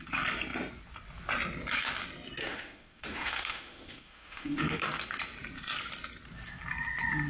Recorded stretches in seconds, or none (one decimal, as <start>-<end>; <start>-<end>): 0.0-2.4; 4.8-7.3